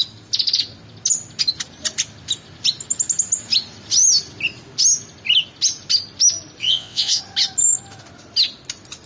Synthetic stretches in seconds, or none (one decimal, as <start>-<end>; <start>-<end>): 6.6-7.2